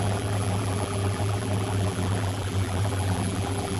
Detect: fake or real fake